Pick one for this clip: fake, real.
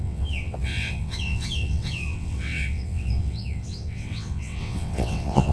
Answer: fake